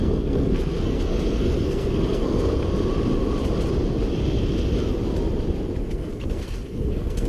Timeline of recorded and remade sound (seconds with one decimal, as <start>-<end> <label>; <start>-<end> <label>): 0.0-2.6 remade; 2.6-5.9 recorded; 5.9-7.3 remade